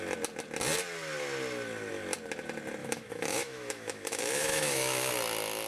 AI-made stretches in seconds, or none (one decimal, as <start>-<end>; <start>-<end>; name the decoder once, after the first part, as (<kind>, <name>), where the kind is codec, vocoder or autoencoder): 2.8-5.1 (autoencoder, DAC-VAE)